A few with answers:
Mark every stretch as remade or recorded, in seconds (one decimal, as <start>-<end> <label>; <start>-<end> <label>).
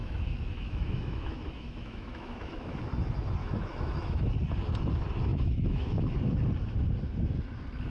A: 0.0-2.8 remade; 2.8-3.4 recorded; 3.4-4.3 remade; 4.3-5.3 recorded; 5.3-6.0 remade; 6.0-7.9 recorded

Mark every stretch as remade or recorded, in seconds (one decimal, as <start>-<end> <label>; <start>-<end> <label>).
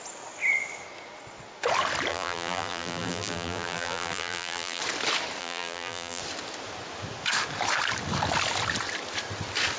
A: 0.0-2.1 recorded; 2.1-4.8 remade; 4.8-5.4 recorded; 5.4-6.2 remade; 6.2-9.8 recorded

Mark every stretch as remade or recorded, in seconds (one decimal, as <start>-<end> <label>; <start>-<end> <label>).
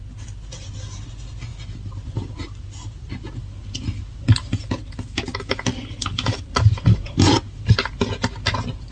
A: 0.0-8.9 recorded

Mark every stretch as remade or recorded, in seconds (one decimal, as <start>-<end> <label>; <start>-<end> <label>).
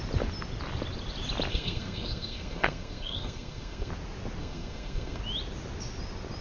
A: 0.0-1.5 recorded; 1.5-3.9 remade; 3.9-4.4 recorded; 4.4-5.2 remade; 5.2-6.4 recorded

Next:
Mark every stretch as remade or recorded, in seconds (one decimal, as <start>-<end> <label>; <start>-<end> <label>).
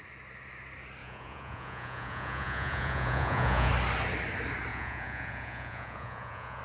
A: 0.0-1.0 recorded; 1.0-3.7 remade; 3.7-4.7 recorded; 4.7-6.6 remade